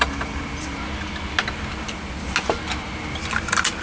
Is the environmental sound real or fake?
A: real